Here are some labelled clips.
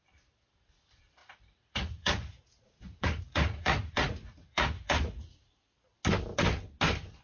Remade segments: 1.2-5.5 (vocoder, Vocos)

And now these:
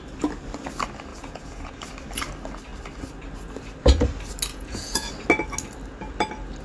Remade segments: 1.1-1.7 (vocoder, Vocos); 4.5-5.1

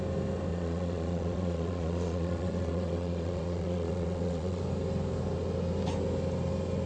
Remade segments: 0.5-4.6 (vocoder, Vocos)

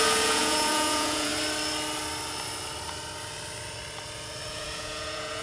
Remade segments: 0.0-1.3 (vocoder, Vocos); 4.5-5.4

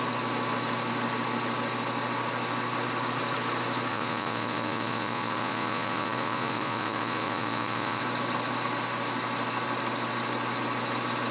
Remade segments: 3.9-8.0 (vocoder, Vocos)

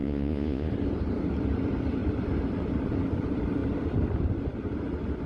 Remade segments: 0.0-0.7 (vocoder, Vocos)

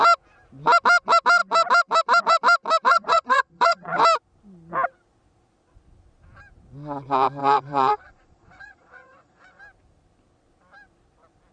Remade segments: 2.9-4.0 (vocoder, Vocos); 7.4-9.6

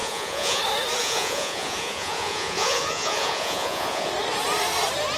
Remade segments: 0.0-0.6 (vocoder, Vocos); 1.0-4.1